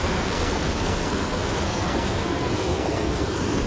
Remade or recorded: remade